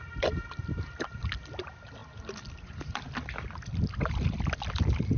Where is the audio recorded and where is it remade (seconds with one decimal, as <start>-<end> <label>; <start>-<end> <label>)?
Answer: 0.0-5.2 recorded

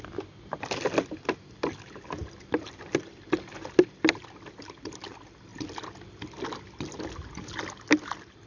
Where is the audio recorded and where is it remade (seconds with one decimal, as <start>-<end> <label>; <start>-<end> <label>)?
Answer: 0.0-8.5 recorded

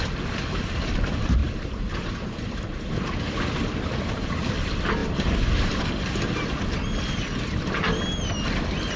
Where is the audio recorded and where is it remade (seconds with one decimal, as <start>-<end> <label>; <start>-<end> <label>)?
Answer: 0.0-1.4 recorded; 1.4-2.9 remade; 2.9-5.0 recorded; 5.0-5.8 remade; 5.8-9.0 recorded

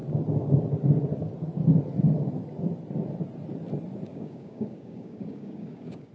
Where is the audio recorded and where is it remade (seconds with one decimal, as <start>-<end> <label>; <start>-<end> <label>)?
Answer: 0.0-4.1 recorded; 4.1-6.1 remade

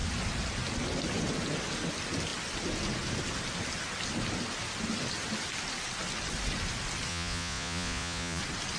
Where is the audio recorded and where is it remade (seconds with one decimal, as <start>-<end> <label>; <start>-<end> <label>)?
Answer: 0.0-7.1 recorded; 7.1-8.4 remade; 8.4-8.8 recorded

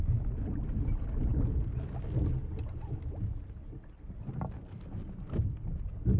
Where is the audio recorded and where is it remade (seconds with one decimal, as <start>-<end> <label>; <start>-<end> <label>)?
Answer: 0.0-6.2 recorded